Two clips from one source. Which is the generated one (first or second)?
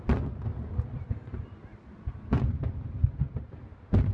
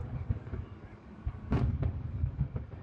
second